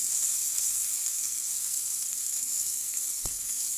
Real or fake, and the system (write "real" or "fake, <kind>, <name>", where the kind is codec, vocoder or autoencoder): fake, codec, SNAC